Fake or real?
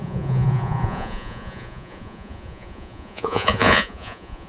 fake